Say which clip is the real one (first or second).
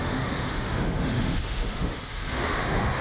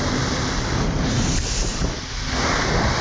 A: second